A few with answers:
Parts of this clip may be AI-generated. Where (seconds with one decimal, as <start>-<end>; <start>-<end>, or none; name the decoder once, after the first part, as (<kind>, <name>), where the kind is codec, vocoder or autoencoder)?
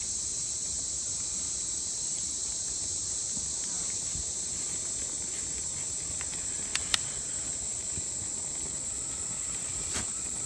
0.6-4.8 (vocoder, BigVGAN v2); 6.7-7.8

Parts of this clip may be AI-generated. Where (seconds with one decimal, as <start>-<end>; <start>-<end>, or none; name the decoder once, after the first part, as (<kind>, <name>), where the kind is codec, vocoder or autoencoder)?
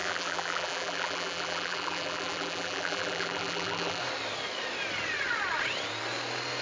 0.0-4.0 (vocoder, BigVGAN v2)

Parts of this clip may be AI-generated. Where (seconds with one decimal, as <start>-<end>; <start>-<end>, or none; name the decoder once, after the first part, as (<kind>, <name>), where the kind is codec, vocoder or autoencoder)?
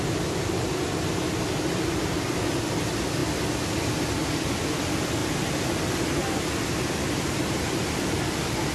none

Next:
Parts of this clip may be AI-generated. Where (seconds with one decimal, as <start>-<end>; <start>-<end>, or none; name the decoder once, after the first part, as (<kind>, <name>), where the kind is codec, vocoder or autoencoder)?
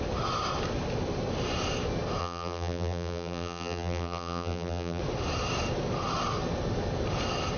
2.2-5.0 (vocoder, BigVGAN v2)